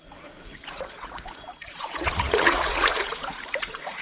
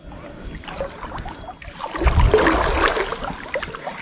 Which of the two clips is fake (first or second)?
first